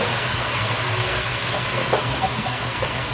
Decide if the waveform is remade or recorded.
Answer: remade